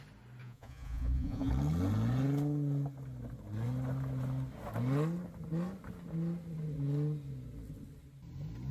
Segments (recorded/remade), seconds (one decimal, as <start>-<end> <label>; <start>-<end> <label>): 0.0-0.4 recorded; 0.4-1.5 remade; 1.5-8.7 recorded